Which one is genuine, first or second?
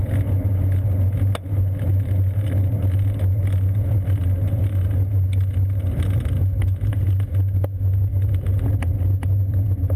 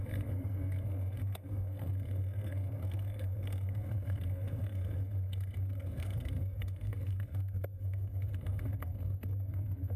first